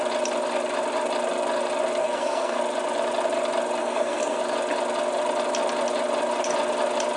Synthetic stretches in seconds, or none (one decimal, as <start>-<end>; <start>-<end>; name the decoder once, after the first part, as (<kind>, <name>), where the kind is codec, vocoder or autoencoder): 2.0-2.6 (codec, SNAC); 3.8-4.4